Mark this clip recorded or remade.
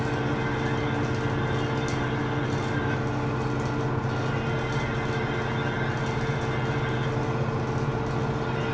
recorded